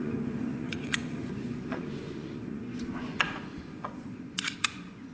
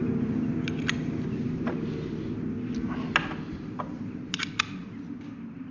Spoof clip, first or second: first